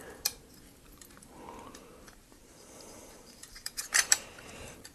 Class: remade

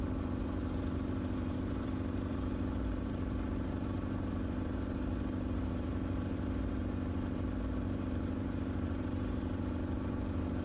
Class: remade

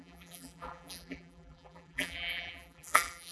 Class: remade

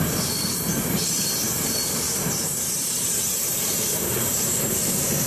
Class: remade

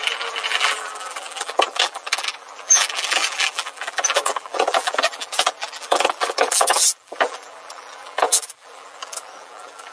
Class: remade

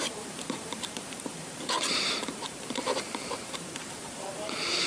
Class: remade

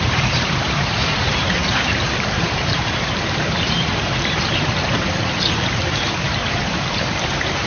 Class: remade